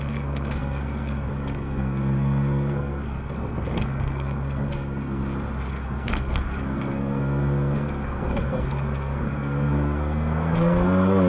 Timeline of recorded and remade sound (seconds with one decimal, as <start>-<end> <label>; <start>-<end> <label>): 0.0-5.2 remade; 5.2-5.7 recorded; 5.7-11.3 remade